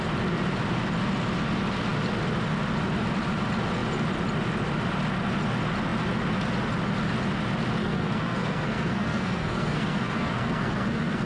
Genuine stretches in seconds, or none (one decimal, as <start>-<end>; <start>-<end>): 0.0-7.8